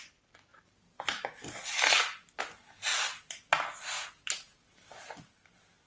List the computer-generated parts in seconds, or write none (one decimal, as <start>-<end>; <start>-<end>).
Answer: none

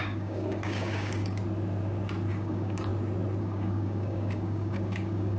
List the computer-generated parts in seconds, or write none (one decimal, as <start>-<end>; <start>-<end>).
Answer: 0.0-1.4; 2.3-2.9; 3.4-5.4

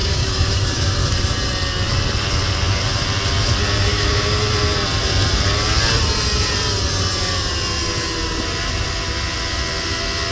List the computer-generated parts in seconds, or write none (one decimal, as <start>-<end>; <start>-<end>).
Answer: 0.0-0.9; 3.9-4.4